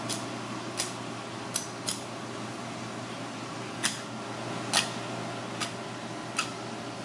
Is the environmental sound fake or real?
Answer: real